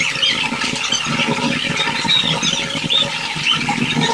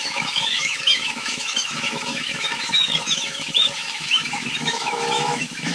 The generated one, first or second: second